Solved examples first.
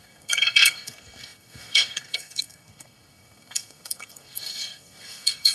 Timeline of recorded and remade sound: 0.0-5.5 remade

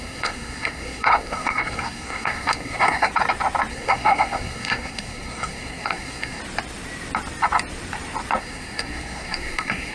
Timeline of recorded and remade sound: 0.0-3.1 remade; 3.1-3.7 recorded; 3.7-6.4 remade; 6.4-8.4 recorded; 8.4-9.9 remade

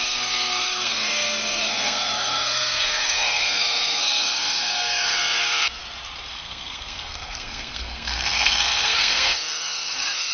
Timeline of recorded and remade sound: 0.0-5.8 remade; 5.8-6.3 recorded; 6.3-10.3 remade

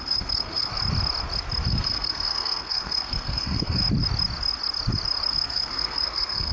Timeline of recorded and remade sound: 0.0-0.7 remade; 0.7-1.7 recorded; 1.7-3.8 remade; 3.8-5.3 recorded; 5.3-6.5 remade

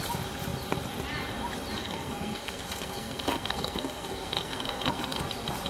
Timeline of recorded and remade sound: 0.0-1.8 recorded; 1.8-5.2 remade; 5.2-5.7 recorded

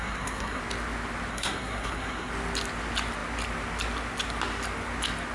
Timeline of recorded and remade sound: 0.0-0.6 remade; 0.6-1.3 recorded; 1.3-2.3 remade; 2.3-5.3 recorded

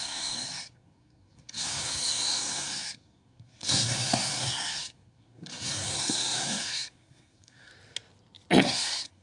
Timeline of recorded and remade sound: 0.0-7.7 remade; 7.7-8.6 recorded; 8.6-9.2 remade

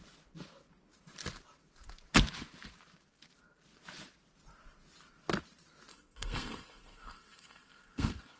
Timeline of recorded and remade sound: 0.0-5.9 recorded; 5.9-8.4 remade